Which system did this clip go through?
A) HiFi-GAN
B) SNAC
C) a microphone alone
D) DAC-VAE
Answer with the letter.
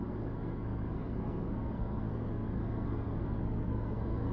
B